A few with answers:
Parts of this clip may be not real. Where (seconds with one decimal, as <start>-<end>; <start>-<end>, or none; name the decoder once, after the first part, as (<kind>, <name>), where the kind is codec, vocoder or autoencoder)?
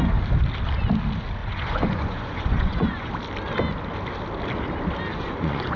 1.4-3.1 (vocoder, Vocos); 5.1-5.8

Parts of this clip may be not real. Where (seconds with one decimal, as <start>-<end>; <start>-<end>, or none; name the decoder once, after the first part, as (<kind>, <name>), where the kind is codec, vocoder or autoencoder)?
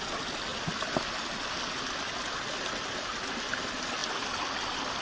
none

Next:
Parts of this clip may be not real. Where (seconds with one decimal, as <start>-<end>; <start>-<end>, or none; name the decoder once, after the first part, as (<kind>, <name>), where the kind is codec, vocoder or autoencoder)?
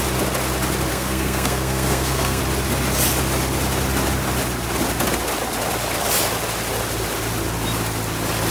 0.9-2.4 (codec, SNAC)